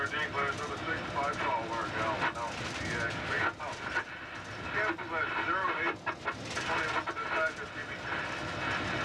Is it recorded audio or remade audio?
recorded